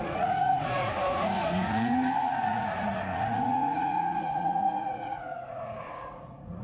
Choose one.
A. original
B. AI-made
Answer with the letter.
B